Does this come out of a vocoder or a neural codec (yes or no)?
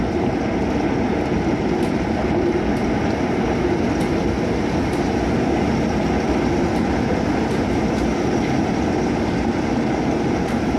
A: no